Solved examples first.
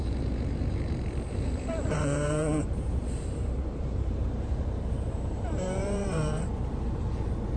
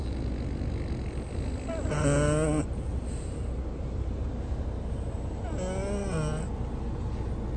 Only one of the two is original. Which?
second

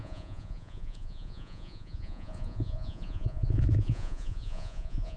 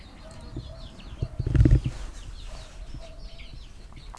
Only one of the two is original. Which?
second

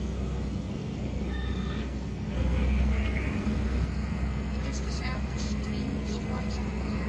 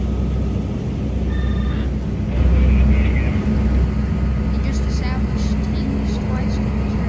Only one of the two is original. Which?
second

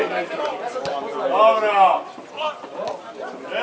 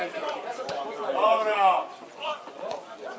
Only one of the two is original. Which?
first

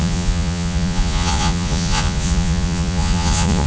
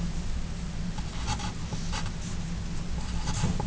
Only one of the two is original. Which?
second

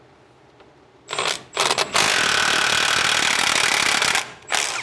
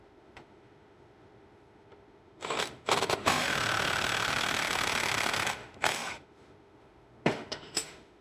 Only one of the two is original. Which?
first